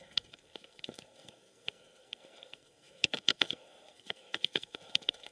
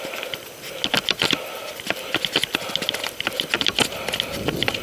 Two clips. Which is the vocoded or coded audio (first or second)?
first